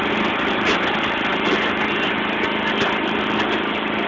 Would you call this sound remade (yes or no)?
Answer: no